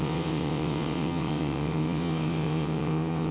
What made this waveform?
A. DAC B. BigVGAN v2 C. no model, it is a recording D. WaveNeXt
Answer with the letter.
D